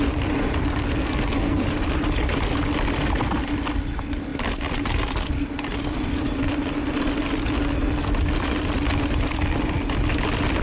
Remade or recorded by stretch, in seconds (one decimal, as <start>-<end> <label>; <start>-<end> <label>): 0.0-1.0 recorded; 1.0-1.6 remade; 1.6-10.6 recorded

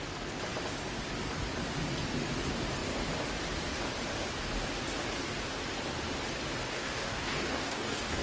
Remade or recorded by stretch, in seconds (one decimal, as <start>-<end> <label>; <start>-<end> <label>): 0.0-6.6 recorded; 6.6-8.2 remade

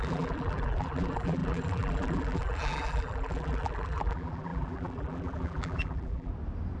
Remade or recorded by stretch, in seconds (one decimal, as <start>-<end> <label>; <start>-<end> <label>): 0.0-6.3 remade; 6.3-6.8 recorded

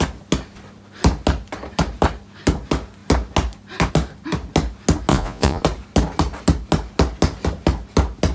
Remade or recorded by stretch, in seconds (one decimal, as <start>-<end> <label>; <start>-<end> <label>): 0.0-5.1 recorded; 5.1-5.6 remade; 5.6-8.3 recorded